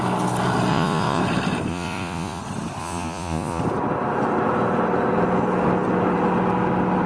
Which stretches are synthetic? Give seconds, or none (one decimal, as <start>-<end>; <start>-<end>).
0.7-1.2; 1.7-2.4; 2.8-3.6